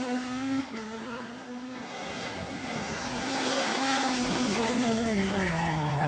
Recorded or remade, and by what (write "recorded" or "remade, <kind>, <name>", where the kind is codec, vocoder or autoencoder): remade, codec, SNAC